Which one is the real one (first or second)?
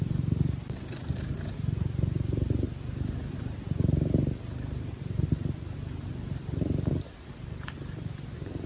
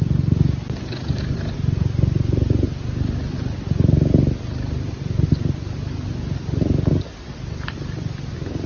second